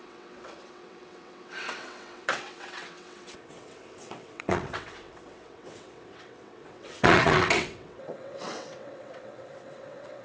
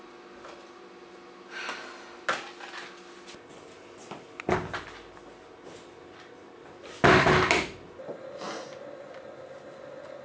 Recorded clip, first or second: second